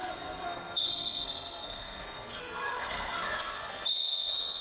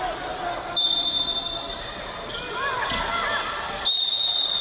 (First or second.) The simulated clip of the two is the first